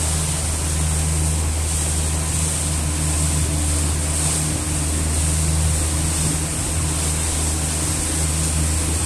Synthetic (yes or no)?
no